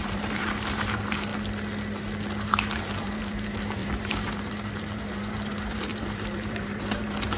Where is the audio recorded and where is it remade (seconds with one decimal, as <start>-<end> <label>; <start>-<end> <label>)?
0.0-1.3 remade; 1.3-2.4 recorded; 2.4-7.4 remade